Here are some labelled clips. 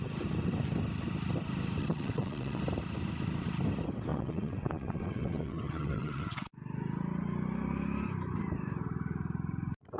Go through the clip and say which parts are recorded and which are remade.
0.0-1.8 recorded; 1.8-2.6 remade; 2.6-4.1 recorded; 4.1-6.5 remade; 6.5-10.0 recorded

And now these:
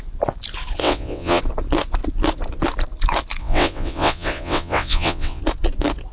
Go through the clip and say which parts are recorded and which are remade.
0.0-0.8 recorded; 0.8-1.4 remade; 1.4-3.4 recorded; 3.4-5.4 remade; 5.4-6.1 recorded

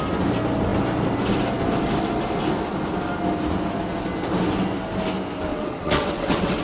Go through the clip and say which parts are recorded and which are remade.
0.0-5.5 recorded; 5.5-6.6 remade

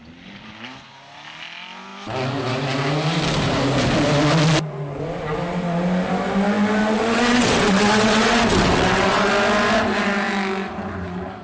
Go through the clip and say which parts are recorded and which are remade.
0.0-6.8 recorded; 6.8-9.3 remade; 9.3-11.4 recorded

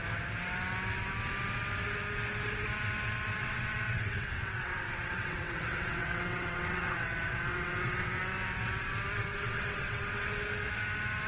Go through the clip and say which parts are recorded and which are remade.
0.0-3.4 recorded; 3.4-8.2 remade; 8.2-9.3 recorded; 9.3-10.3 remade; 10.3-11.3 recorded